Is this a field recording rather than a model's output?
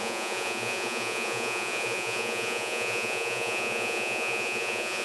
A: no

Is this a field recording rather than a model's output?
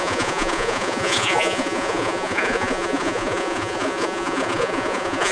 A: no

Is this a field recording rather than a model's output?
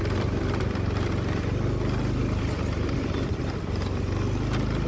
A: yes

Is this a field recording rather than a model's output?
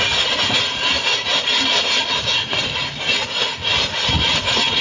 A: yes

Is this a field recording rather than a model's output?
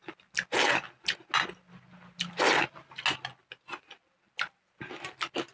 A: yes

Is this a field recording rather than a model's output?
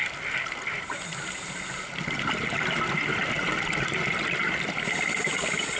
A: yes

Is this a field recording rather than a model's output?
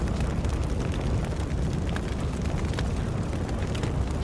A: yes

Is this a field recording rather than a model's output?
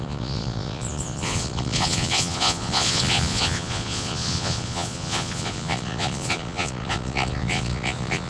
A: no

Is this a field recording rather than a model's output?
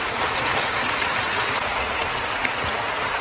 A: no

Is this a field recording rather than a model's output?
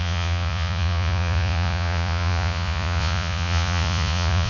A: no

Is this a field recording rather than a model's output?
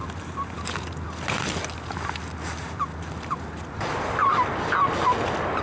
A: yes